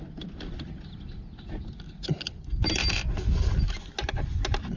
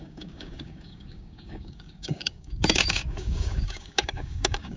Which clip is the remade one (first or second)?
second